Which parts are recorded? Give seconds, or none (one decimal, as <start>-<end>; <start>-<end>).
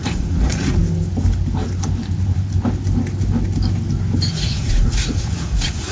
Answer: 0.8-4.3